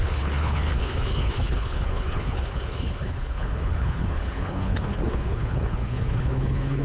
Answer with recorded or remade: remade